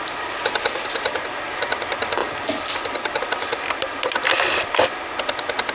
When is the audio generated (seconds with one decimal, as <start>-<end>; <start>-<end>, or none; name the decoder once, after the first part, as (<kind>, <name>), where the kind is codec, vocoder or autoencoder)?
none